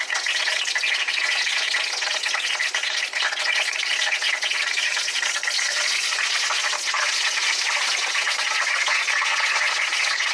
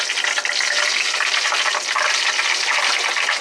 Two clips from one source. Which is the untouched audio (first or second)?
second